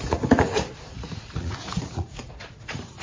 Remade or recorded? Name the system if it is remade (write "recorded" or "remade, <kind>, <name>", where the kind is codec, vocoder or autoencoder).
remade, vocoder, Vocos